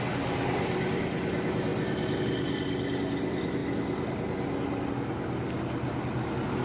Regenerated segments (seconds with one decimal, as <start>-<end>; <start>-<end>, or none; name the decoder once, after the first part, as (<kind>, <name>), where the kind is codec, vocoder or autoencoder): none